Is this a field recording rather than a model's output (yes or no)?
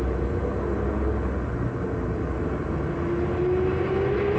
yes